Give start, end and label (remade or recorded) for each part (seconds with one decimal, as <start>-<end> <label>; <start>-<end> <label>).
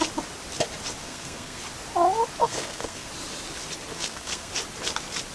0.0-1.0 recorded; 1.0-1.6 remade; 1.6-2.4 recorded; 2.4-3.1 remade; 3.1-3.9 recorded; 3.9-4.5 remade; 4.5-5.3 recorded